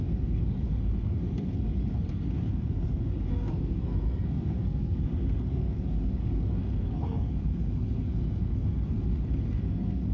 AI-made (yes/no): yes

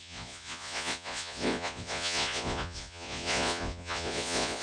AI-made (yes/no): yes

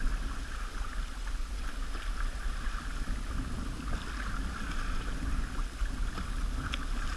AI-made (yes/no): no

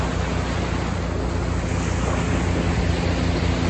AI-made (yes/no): no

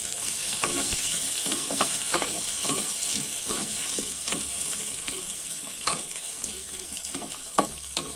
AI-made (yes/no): yes